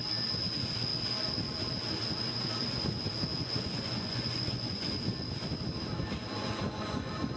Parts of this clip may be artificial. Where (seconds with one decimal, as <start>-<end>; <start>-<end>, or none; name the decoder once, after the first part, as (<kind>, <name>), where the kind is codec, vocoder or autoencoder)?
3.3-4.9 (vocoder, Vocos); 6.4-7.4